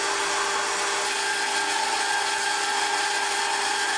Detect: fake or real real